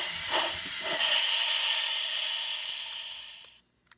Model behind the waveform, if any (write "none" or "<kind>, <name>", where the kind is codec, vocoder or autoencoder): none